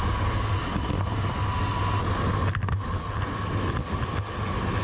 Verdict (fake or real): real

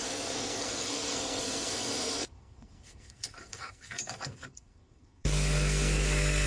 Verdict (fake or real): fake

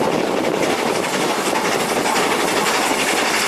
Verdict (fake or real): real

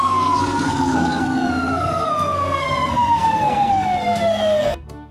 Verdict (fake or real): fake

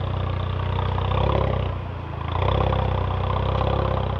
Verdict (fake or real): real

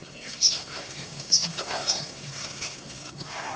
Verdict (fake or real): fake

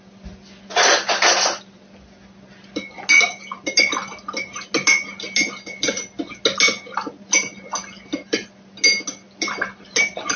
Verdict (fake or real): real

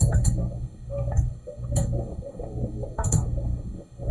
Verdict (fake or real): fake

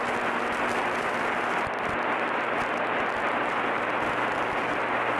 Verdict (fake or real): real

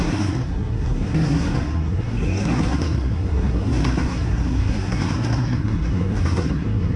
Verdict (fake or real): fake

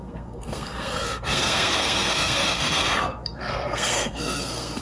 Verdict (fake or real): fake